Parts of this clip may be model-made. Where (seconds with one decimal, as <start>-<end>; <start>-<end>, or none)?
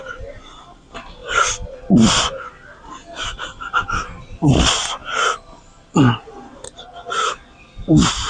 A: none